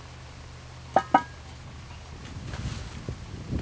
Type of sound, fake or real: real